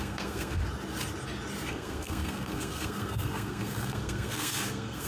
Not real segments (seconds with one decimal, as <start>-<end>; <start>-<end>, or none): 0.0-0.6; 1.7-5.1